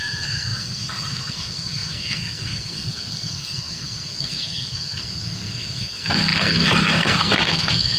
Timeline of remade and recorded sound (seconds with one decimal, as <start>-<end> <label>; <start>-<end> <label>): 0.0-8.0 remade